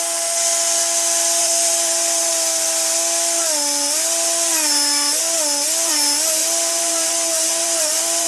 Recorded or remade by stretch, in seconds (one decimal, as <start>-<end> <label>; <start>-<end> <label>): 0.0-1.4 recorded; 1.4-2.3 remade; 2.3-6.4 recorded; 6.4-8.3 remade